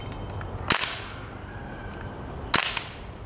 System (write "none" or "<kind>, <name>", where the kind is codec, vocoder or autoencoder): none